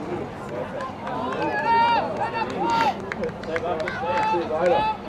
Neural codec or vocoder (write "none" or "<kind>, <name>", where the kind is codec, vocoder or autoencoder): none